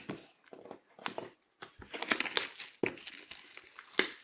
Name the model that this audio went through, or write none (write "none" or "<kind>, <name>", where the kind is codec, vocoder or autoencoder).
none